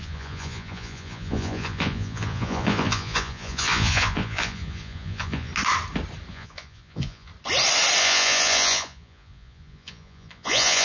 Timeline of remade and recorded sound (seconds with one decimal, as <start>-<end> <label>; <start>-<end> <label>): 0.0-5.5 remade; 5.5-6.3 recorded; 6.3-7.3 remade; 7.3-8.0 recorded; 8.0-10.8 remade